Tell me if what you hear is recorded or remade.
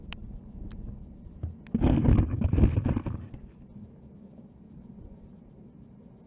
recorded